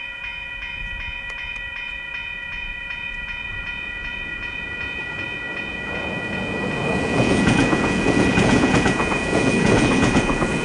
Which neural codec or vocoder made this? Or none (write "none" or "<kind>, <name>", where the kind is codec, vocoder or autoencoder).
vocoder, Vocos